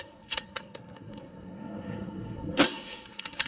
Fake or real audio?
fake